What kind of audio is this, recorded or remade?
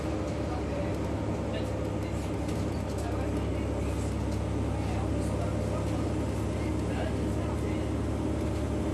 recorded